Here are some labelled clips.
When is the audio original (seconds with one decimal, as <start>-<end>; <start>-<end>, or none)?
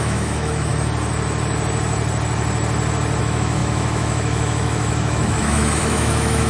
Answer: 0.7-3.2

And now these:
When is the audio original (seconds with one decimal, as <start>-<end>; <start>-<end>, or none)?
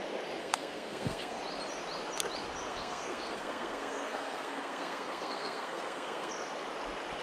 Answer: 0.0-0.4; 1.4-2.7; 6.3-7.2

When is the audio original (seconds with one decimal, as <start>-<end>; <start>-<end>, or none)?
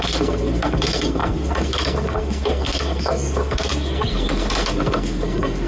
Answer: none